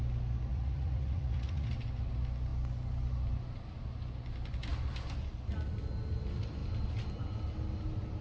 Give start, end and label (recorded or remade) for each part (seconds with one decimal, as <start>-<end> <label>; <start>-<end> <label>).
0.0-0.5 recorded; 0.5-1.7 remade; 1.7-8.2 recorded